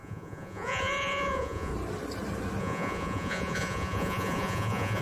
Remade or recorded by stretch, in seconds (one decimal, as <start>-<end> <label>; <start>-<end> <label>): 0.0-1.7 remade; 1.7-2.6 recorded; 2.6-5.0 remade